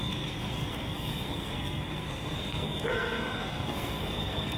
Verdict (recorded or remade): remade